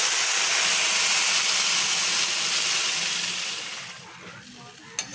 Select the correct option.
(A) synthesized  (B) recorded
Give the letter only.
B